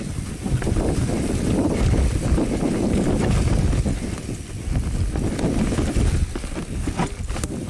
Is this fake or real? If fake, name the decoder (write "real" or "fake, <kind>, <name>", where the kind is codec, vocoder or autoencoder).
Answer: real